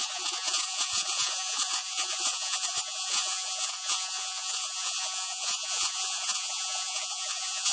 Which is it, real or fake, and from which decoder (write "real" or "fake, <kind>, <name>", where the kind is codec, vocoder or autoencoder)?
fake, vocoder, Vocos